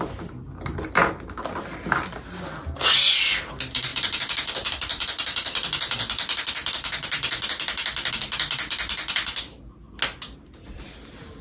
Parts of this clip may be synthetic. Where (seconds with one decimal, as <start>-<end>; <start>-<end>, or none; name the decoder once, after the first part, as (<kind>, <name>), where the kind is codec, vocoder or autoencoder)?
none